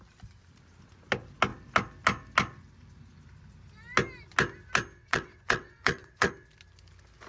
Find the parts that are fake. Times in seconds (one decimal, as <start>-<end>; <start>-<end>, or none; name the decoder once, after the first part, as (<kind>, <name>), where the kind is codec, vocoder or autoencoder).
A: 5.0-6.3 (vocoder, WaveNeXt)